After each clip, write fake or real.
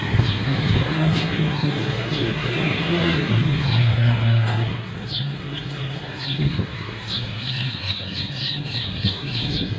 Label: fake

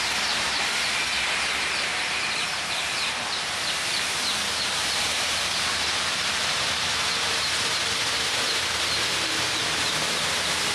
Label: fake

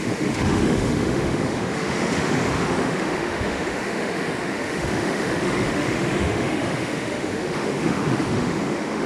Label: fake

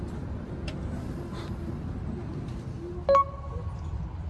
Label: real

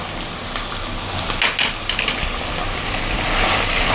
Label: real